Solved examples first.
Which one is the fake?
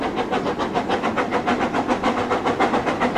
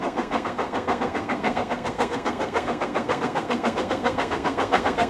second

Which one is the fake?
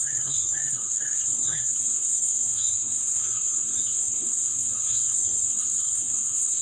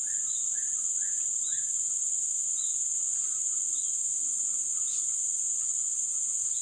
first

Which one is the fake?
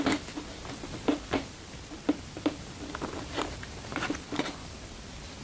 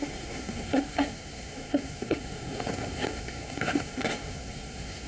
second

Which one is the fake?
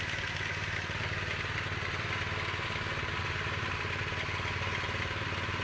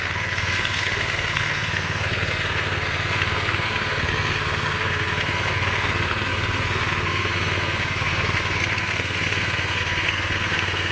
second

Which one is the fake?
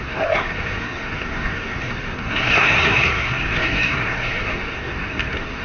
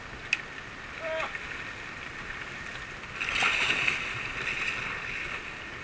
first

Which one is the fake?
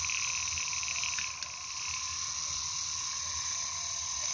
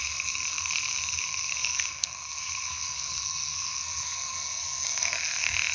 second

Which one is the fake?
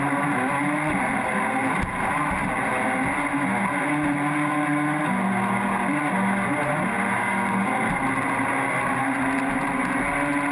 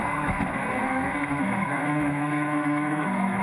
second